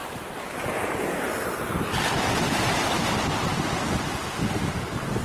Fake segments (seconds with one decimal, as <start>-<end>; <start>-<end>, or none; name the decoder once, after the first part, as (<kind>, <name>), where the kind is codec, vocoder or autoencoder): none